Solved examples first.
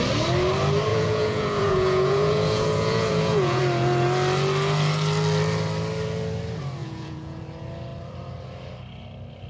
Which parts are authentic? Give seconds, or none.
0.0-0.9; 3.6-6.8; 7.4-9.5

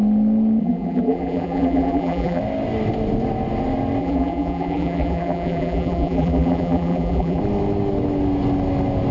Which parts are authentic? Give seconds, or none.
0.0-0.6; 2.4-4.0; 7.4-9.1

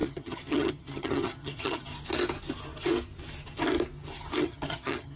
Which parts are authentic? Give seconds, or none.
1.9-4.4

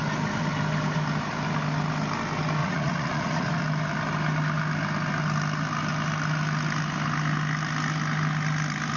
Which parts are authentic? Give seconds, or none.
0.0-2.6; 3.6-9.0